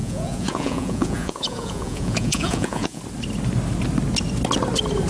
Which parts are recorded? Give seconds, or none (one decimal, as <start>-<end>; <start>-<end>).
3.0-5.1

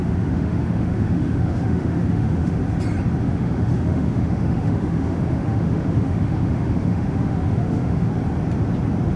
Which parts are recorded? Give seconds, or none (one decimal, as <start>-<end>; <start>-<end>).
2.6-3.2; 8.1-9.2

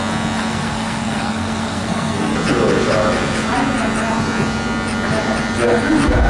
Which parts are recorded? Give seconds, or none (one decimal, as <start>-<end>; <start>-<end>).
0.0-0.5; 2.3-6.3

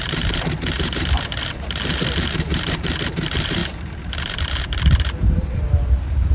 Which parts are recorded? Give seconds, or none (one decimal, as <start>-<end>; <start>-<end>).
none

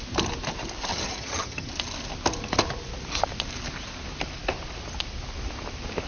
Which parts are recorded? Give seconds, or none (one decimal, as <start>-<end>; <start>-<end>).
0.0-0.9; 1.7-6.1

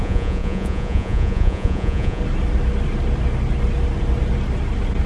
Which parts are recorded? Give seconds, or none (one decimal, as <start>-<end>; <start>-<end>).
2.2-5.1